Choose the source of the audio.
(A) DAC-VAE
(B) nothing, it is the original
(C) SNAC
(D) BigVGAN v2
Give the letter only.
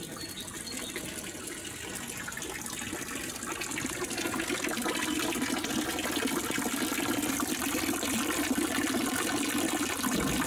B